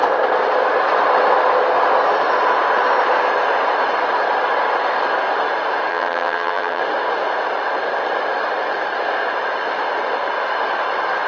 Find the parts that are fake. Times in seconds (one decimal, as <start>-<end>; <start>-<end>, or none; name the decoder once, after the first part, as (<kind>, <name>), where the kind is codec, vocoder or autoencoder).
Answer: 5.9-6.8 (vocoder, HiFi-GAN)